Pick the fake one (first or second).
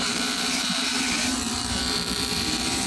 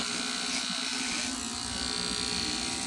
first